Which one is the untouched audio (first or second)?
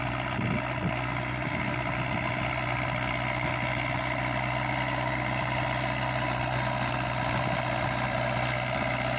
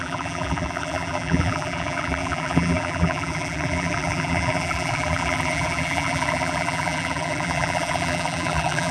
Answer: first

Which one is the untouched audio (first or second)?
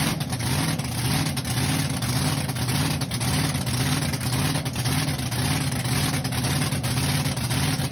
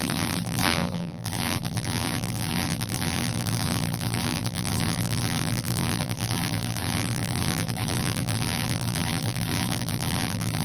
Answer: first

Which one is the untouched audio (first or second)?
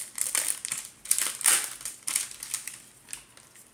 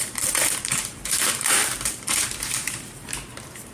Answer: first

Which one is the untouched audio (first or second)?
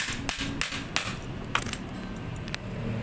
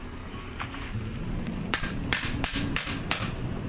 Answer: first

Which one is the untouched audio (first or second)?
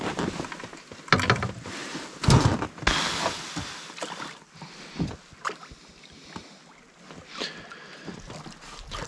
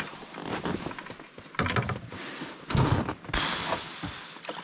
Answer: first